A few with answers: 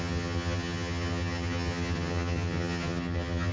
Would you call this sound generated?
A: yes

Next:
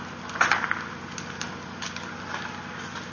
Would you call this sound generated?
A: no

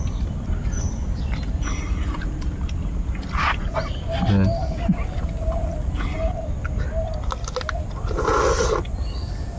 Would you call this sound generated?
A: no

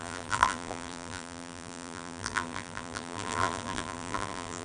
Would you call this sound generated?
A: yes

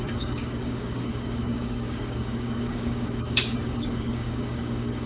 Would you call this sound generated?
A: yes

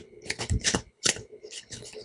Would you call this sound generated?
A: yes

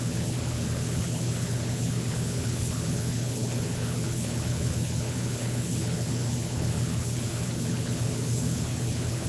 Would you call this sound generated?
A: yes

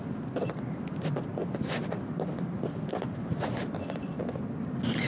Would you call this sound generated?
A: no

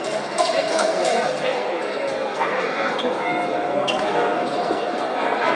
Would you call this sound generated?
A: yes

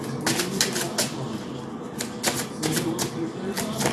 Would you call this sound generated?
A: no